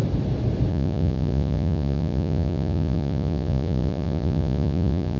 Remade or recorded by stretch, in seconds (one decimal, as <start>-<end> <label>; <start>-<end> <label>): 0.0-0.7 recorded; 0.7-5.2 remade